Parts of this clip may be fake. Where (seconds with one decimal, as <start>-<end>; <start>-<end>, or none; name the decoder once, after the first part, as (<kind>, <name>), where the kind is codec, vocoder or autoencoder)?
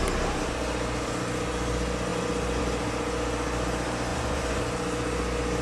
4.1-4.6 (vocoder, Vocos)